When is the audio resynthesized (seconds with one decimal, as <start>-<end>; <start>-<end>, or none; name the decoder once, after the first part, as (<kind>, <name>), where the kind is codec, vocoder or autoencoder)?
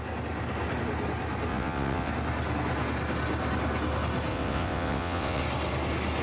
1.5-2.1 (vocoder, WaveNeXt); 4.3-5.4